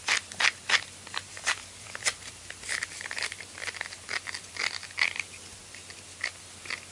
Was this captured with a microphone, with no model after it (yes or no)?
yes